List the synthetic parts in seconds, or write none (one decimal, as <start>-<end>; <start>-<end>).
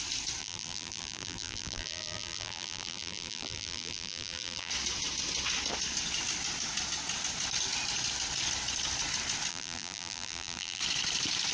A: 0.4-4.7; 9.5-10.8